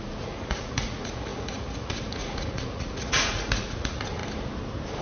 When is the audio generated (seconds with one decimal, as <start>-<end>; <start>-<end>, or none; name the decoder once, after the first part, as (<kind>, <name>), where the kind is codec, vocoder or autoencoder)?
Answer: 0.0-4.2 (vocoder, Vocos)